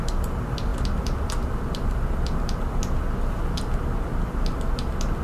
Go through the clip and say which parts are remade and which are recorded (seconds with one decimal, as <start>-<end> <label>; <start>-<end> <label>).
0.0-5.2 recorded